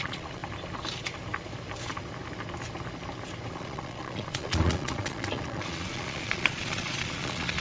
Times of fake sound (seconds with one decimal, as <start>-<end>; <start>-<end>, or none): 0.0-0.4; 3.5-7.6